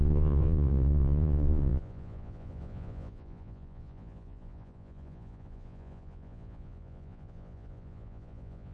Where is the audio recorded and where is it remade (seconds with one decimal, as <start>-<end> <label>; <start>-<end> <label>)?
0.0-8.7 remade